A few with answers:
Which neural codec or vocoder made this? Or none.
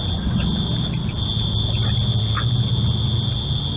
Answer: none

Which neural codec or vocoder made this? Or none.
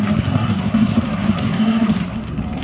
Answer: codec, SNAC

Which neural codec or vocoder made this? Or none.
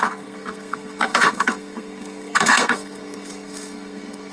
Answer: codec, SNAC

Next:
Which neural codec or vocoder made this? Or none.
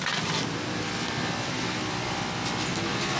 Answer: none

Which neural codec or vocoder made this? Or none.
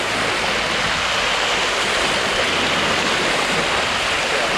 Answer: none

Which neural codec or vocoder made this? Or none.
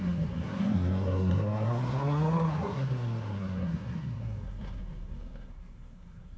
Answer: codec, SNAC